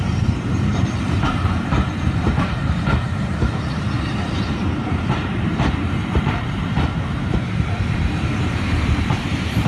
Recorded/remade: remade